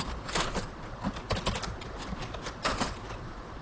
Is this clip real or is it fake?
fake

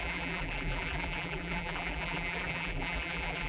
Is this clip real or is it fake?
fake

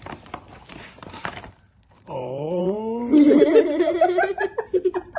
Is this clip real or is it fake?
fake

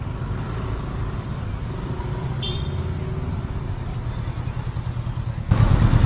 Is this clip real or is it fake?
real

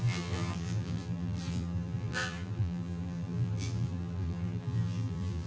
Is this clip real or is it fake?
fake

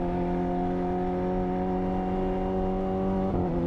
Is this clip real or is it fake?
real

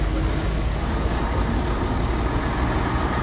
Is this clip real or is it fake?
real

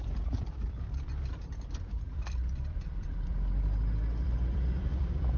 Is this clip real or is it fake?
fake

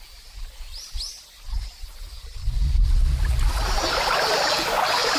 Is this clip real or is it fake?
real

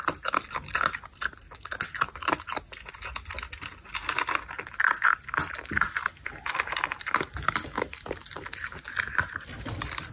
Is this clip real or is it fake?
real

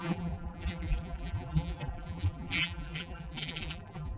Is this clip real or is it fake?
fake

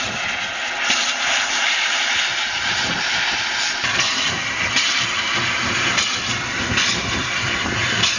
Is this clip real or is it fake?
fake